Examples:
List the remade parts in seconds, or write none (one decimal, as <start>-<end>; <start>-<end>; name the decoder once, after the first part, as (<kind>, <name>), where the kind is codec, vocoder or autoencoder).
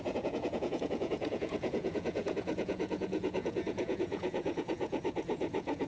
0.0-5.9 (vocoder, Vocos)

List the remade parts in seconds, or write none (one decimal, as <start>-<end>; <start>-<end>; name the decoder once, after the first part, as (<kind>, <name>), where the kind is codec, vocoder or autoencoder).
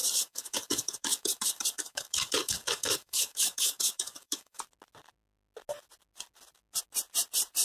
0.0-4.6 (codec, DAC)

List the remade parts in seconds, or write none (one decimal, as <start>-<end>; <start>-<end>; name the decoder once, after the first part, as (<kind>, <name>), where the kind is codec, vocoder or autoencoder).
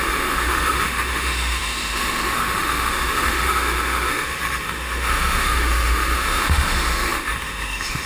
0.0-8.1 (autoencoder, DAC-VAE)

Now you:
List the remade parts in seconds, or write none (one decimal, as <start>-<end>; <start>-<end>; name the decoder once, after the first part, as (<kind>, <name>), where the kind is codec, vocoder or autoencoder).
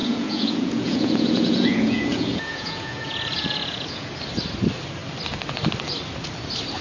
0.0-4.1 (vocoder, Vocos)